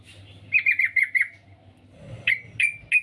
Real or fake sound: real